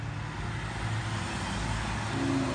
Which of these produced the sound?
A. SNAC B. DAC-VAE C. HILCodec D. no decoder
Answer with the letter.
D